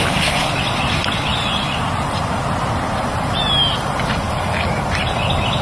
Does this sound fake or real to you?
real